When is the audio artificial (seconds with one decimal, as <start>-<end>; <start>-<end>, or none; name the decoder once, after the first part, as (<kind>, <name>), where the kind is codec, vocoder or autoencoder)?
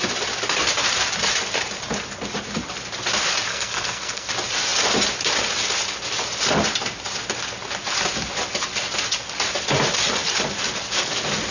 3.5-4.3 (codec, SNAC)